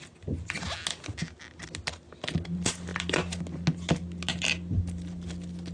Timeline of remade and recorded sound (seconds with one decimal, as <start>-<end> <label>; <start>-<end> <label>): 0.0-5.7 recorded